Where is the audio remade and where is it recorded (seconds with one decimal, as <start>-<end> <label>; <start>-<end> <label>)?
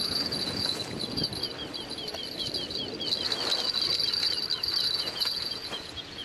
0.0-1.3 remade; 1.3-5.0 recorded; 5.0-6.2 remade